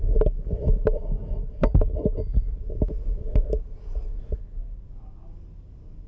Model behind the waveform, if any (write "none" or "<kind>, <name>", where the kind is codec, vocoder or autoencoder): none